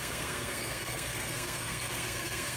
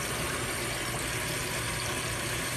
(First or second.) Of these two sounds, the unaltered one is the second